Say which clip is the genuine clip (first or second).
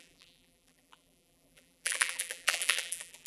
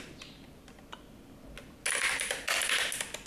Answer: second